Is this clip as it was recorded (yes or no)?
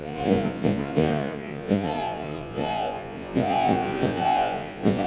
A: no